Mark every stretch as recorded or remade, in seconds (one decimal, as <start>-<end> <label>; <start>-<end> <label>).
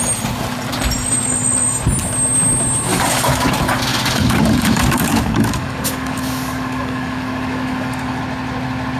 0.0-2.9 recorded; 2.9-3.5 remade; 3.5-3.9 recorded; 3.9-8.2 remade; 8.2-9.0 recorded